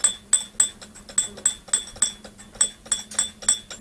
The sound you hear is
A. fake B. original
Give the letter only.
B